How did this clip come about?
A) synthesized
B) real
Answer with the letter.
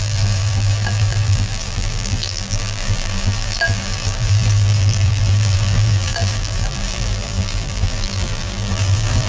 A